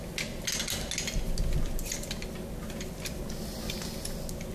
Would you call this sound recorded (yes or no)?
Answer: yes